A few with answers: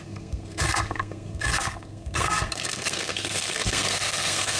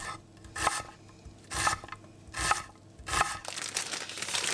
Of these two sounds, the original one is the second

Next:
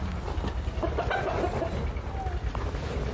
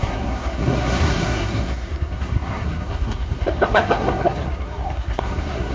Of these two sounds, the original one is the first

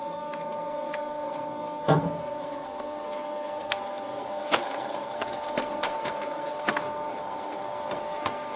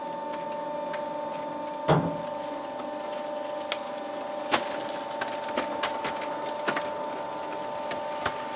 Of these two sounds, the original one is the second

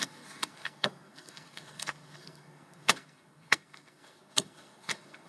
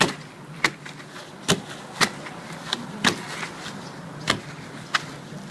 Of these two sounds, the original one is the second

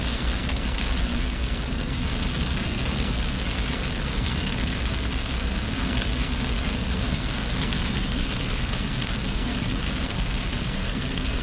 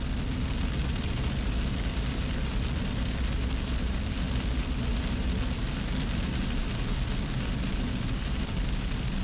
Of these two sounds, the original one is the second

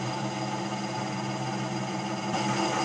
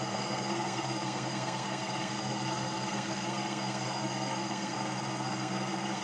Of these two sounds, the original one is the first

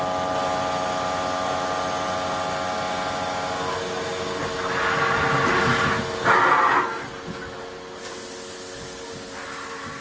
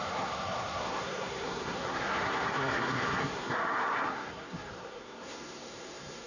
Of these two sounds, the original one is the first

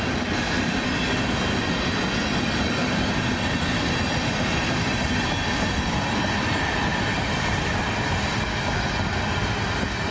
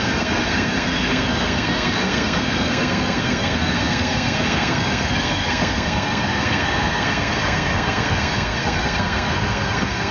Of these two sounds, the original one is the first